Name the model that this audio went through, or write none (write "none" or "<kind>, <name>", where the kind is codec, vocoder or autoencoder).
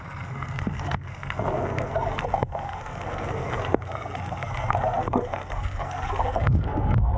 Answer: codec, SNAC